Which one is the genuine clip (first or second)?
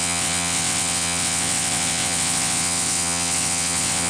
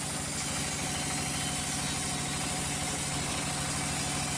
second